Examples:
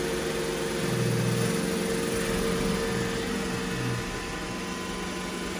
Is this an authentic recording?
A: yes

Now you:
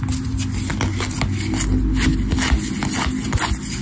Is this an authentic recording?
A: yes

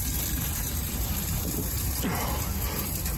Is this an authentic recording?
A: yes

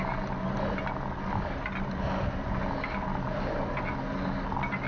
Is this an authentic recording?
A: yes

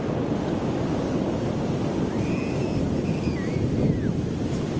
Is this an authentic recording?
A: yes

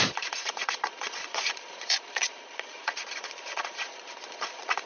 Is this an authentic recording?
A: no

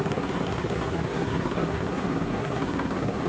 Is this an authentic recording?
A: no